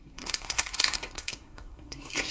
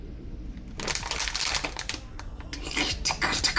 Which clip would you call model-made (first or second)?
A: first